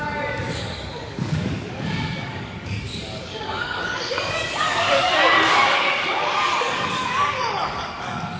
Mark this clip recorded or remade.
remade